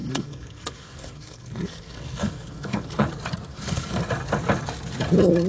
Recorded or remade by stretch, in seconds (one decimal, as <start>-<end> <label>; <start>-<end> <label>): 0.0-3.1 remade; 3.1-3.5 recorded; 3.5-4.0 remade; 4.0-5.5 recorded